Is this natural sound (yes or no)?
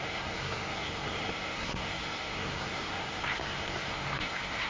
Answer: no